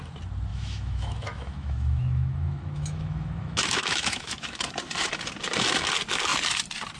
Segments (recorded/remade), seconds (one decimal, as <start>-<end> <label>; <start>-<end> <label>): 0.0-0.5 recorded; 0.5-4.7 remade; 4.7-7.0 recorded